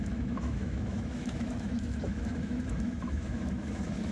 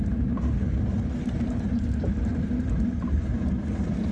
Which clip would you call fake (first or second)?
first